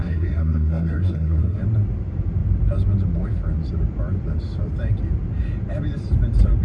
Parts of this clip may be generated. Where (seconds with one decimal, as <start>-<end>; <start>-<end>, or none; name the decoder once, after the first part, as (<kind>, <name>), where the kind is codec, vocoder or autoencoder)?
0.0-1.6 (codec, SNAC)